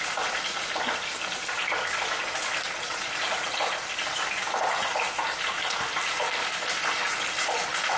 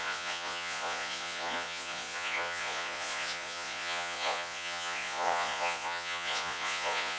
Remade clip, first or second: second